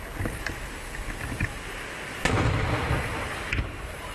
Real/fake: real